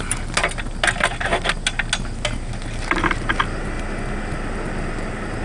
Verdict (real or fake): real